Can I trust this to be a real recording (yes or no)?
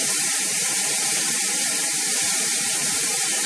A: no